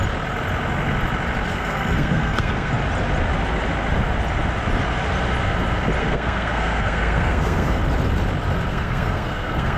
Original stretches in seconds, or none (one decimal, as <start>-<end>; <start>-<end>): 0.0-1.5; 2.7-6.0; 7.8-8.7